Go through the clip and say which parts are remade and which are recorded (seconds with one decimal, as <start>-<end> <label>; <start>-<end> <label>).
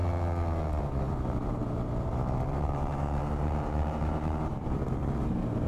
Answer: 0.0-0.8 recorded; 0.8-5.7 remade